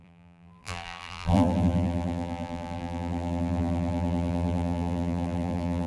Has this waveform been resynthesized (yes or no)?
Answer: yes